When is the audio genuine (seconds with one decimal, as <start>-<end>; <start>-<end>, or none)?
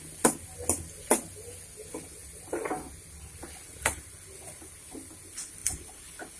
0.0-6.4